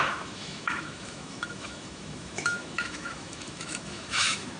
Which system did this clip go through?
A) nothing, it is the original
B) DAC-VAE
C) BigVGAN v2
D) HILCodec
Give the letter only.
B